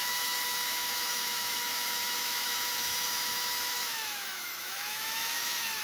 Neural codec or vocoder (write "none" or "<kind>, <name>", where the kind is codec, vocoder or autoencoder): autoencoder, DAC-VAE